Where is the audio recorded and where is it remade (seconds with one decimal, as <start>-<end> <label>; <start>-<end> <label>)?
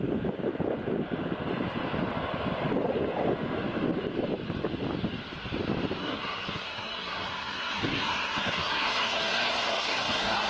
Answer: 0.0-6.0 recorded; 6.0-10.5 remade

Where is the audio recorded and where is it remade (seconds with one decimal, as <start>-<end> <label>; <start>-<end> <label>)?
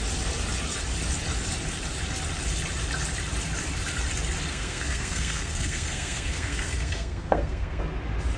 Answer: 0.0-4.5 recorded; 4.5-7.8 remade; 7.8-8.4 recorded